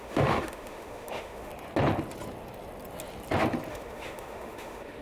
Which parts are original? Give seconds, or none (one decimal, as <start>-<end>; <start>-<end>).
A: 1.5-3.7